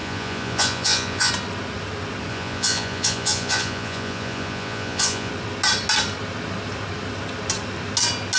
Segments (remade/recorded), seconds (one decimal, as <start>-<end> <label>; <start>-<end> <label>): 0.0-1.3 remade; 1.3-2.3 recorded; 2.3-5.3 remade; 5.3-8.4 recorded